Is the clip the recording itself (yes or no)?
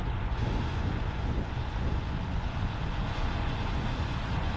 no